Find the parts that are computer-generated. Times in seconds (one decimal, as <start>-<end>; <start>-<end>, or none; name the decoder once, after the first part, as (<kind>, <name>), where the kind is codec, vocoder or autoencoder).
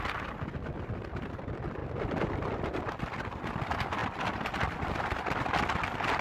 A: 1.8-3.2 (vocoder, BigVGAN v2); 4.0-4.8